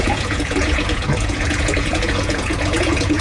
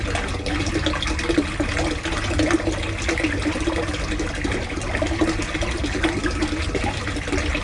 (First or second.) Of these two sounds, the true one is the second